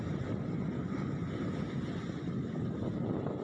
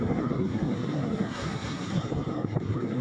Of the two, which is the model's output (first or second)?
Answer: second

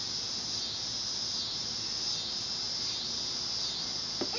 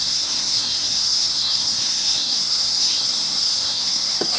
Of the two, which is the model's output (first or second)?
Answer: second